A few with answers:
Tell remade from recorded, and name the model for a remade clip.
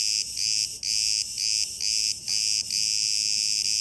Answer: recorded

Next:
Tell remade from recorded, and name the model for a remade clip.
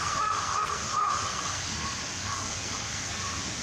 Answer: remade, codec, SNAC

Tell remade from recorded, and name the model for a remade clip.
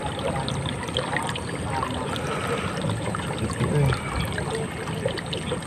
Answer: recorded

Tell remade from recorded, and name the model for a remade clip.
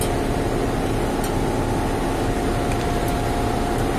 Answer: recorded